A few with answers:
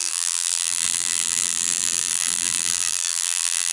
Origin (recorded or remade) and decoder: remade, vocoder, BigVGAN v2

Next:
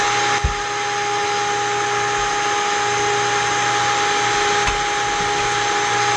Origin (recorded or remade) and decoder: recorded